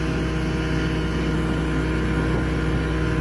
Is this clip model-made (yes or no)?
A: no